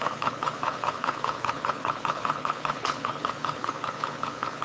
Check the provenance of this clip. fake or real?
fake